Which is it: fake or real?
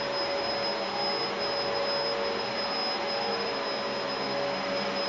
real